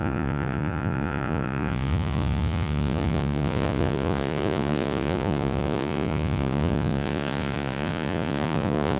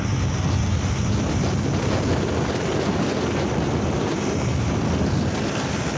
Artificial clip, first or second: first